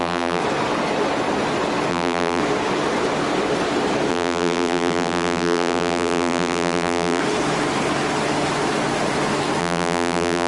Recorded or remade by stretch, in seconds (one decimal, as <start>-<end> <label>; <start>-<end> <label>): 0.0-0.4 remade; 0.4-1.9 recorded; 1.9-2.4 remade; 2.4-4.1 recorded; 4.1-7.2 remade; 7.2-9.6 recorded; 9.6-10.5 remade